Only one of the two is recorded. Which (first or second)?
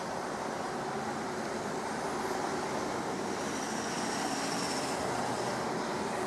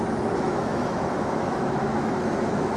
first